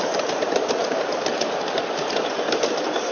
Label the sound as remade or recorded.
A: remade